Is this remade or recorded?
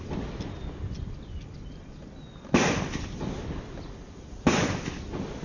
recorded